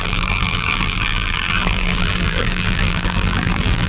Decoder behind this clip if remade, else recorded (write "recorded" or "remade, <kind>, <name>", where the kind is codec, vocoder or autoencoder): remade, vocoder, BigVGAN v2